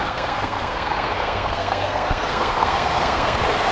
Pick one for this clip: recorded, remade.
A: remade